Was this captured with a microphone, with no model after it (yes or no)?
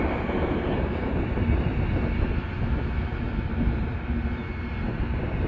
yes